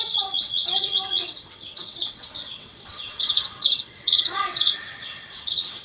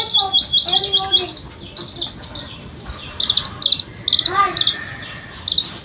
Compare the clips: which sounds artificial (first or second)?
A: first